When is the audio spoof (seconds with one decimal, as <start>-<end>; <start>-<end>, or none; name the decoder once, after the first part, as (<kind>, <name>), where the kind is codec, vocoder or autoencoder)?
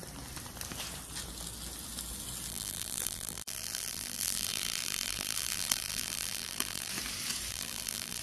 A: 2.5-6.9 (vocoder, BigVGAN v2); 7.5-8.2